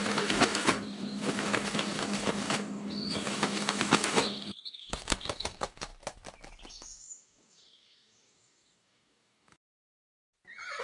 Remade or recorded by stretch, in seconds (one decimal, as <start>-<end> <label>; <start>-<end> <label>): 0.0-5.9 remade; 5.9-6.7 recorded; 6.7-9.5 remade; 9.5-10.8 recorded